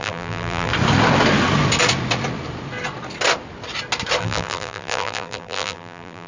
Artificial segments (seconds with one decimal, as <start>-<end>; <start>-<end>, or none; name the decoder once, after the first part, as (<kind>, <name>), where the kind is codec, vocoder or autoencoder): 0.0-0.7 (vocoder, BigVGAN v2); 4.2-6.3